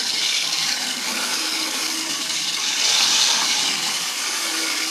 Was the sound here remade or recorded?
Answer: remade